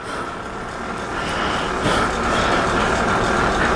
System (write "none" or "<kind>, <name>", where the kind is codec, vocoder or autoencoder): none